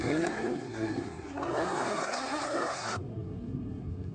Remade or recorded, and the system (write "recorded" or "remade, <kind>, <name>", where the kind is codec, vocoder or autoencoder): remade, codec, SNAC